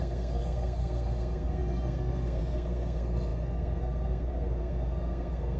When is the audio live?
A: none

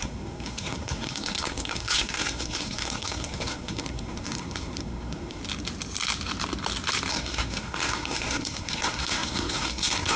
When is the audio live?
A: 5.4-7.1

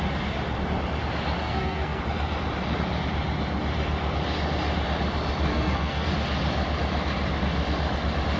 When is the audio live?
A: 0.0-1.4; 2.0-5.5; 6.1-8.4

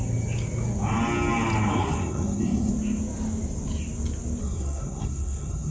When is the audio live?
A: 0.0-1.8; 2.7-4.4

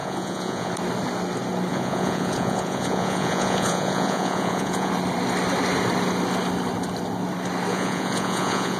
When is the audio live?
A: 0.7-1.7; 4.9-7.7

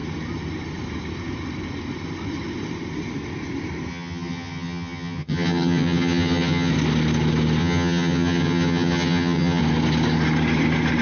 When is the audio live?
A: 0.0-3.9; 6.7-7.6; 9.6-11.0